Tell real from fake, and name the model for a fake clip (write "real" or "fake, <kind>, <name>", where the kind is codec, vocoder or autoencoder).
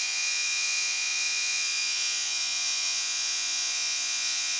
fake, vocoder, Vocos